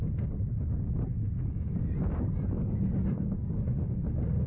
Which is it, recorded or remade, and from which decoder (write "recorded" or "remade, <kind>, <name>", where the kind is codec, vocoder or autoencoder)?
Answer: recorded